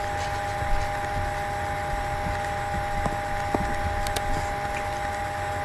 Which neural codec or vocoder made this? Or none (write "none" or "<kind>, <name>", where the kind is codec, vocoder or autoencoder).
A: none